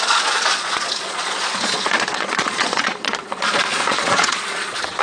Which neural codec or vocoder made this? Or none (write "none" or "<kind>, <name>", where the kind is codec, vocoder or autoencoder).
vocoder, Vocos